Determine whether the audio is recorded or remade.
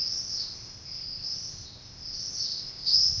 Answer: remade